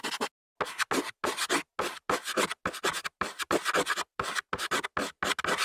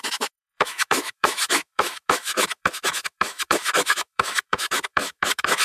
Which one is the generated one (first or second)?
second